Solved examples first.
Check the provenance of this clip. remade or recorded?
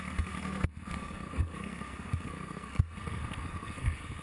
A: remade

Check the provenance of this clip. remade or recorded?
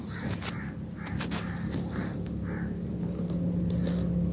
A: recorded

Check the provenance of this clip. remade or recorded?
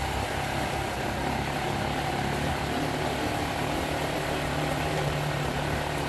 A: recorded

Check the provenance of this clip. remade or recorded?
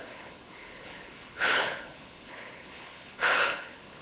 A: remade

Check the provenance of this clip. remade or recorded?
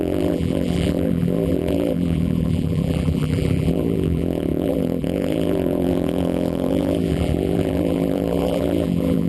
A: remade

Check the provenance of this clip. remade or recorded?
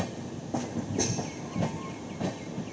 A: recorded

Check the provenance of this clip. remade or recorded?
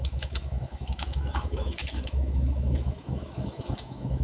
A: remade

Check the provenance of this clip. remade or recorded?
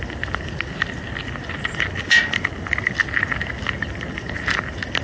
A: recorded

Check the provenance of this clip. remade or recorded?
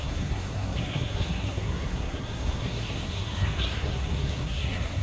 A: remade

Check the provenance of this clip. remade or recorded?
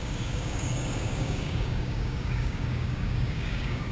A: remade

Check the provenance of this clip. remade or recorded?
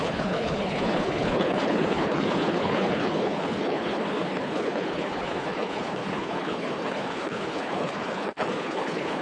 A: remade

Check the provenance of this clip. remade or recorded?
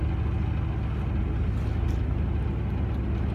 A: recorded